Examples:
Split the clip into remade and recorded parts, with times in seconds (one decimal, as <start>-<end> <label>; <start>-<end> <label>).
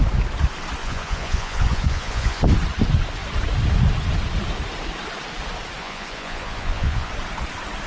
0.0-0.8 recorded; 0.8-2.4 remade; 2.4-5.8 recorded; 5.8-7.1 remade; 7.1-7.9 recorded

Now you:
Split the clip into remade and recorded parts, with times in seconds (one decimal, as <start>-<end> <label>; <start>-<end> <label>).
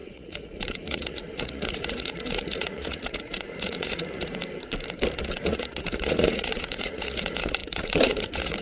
0.0-4.4 remade; 4.4-5.2 recorded; 5.2-8.6 remade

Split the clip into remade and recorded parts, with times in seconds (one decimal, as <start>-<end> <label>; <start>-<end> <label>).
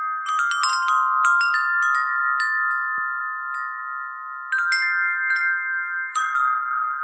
0.0-6.1 recorded; 6.1-7.0 remade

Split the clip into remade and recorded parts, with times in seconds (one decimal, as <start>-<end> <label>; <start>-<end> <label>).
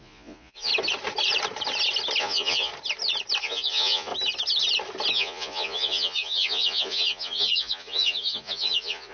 0.0-0.7 remade; 0.7-2.2 recorded; 2.2-2.7 remade; 2.7-3.4 recorded; 3.4-4.1 remade; 4.1-5.1 recorded; 5.1-9.1 remade